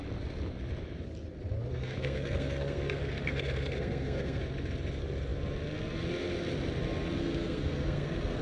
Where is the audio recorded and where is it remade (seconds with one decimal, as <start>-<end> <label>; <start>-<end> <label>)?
0.0-1.7 recorded; 1.7-4.4 remade; 4.4-7.2 recorded; 7.2-8.4 remade